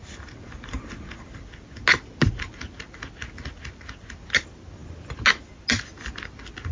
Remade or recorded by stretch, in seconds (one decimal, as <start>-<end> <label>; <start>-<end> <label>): 0.0-6.7 recorded